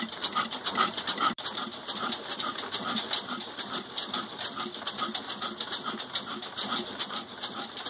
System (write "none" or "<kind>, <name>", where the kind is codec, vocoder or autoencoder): vocoder, BigVGAN v2